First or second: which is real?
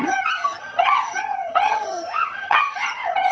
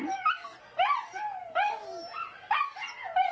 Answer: second